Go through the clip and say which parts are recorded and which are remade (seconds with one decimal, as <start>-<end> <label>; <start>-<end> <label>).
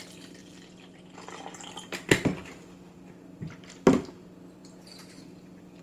0.0-5.8 recorded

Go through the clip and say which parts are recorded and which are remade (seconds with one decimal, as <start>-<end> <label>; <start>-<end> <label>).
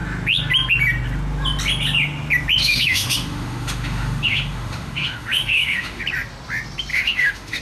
0.0-2.6 recorded; 2.6-6.0 remade; 6.0-6.9 recorded; 6.9-7.6 remade